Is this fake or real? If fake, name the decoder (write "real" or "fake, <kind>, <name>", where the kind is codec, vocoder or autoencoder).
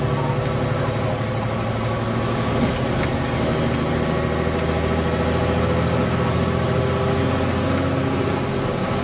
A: real